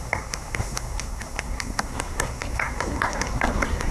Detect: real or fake fake